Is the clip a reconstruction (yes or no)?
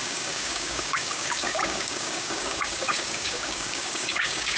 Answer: yes